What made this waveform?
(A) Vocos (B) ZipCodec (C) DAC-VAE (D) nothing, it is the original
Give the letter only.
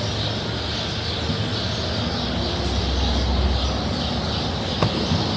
D